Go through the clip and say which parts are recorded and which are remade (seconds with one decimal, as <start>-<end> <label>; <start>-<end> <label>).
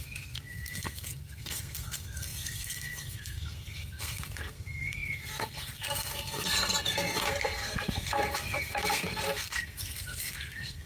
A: 0.0-10.9 remade